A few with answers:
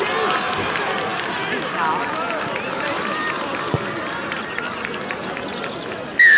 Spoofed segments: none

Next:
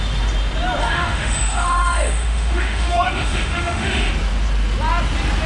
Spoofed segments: 0.8-4.1

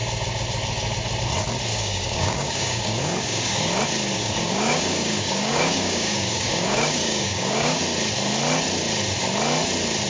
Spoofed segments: 1.7-3.8; 4.2-7.8

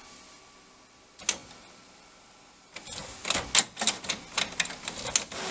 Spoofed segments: none

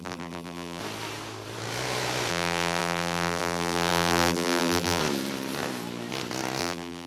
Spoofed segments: 0.0-0.8; 2.3-5.0; 6.6-7.1